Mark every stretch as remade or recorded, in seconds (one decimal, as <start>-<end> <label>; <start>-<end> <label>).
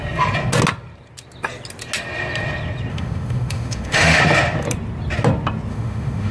0.0-2.9 recorded; 2.9-4.2 remade; 4.2-5.7 recorded; 5.7-6.3 remade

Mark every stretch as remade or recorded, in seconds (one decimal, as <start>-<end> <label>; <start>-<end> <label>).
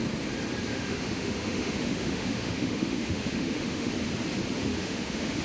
0.0-0.7 recorded; 0.7-3.9 remade; 3.9-4.7 recorded; 4.7-5.4 remade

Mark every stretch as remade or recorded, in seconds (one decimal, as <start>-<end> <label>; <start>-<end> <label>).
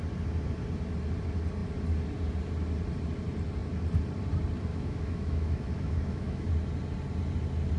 0.0-4.7 recorded; 4.7-6.5 remade; 6.5-7.8 recorded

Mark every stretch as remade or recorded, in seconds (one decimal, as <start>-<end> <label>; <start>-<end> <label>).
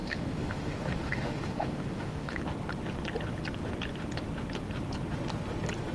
0.0-2.4 remade; 2.4-5.9 recorded